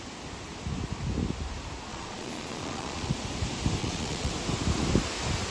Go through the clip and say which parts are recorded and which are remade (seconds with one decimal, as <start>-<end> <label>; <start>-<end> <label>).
0.0-1.9 recorded; 1.9-3.1 remade; 3.1-3.8 recorded; 3.8-4.3 remade; 4.3-5.5 recorded